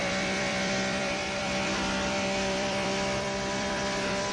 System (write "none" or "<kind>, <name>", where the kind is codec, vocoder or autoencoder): vocoder, BigVGAN v2